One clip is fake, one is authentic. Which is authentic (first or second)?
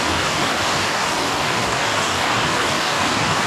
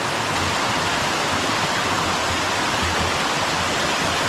second